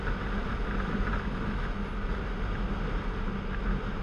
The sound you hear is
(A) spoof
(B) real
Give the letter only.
B